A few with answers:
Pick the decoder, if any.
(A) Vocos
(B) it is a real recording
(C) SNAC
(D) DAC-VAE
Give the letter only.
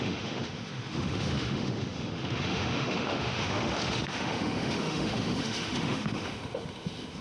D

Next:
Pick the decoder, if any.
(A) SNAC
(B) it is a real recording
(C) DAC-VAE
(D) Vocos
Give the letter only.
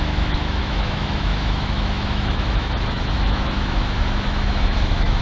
C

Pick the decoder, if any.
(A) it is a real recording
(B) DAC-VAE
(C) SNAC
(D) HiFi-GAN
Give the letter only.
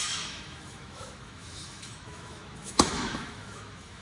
B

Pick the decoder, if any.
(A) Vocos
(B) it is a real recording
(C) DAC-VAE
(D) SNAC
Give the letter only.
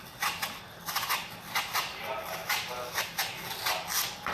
B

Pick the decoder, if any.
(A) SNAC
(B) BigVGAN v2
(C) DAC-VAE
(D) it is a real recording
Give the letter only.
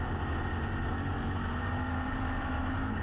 D